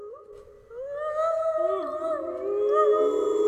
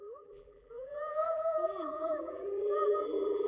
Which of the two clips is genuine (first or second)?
first